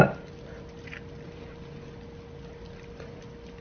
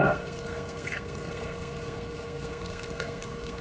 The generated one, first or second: second